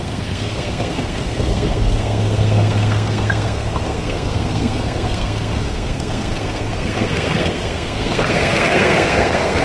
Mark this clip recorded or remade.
remade